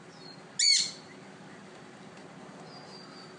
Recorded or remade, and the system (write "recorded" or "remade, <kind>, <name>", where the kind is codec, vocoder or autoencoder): recorded